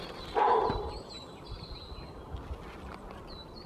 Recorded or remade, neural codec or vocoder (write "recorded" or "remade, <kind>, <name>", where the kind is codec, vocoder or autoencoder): recorded